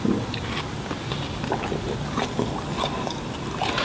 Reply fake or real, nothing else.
real